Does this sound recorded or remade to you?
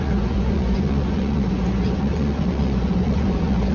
remade